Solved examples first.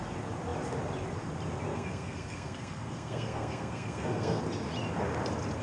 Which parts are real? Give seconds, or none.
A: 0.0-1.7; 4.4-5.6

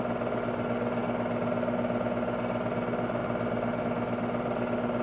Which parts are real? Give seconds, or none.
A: 0.0-5.0